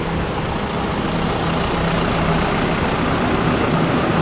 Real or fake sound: real